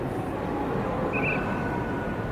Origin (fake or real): real